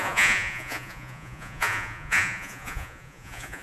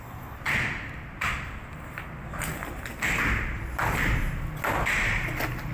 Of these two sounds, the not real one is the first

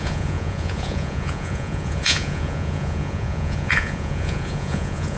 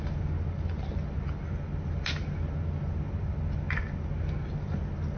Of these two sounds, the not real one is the first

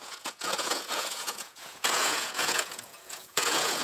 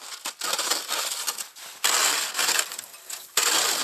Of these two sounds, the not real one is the first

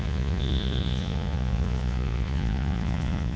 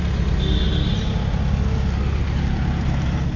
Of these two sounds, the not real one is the first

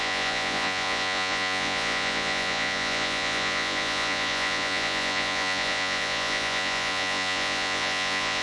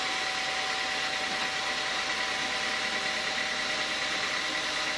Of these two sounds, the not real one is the first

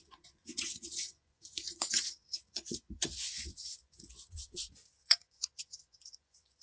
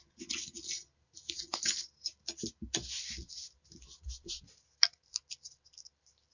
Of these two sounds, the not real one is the first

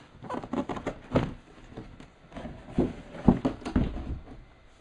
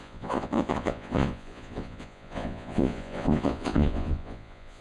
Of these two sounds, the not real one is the second